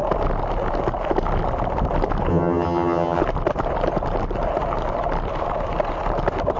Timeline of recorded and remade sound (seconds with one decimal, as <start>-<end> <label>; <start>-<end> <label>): 0.0-2.3 recorded; 2.3-3.2 remade; 3.2-6.6 recorded